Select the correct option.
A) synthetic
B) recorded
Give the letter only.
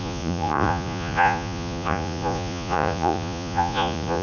A